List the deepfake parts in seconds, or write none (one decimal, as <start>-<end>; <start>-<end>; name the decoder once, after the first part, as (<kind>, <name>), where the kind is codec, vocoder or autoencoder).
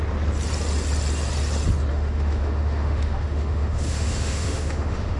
1.9-5.2 (autoencoder, DAC-VAE)